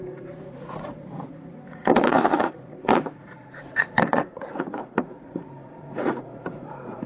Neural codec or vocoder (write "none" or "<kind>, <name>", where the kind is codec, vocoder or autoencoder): vocoder, Vocos